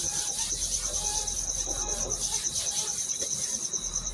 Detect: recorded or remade recorded